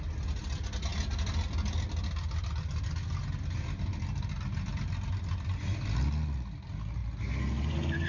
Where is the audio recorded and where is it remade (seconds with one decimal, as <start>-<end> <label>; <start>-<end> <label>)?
0.0-8.1 recorded